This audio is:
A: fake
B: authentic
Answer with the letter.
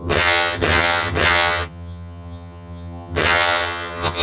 A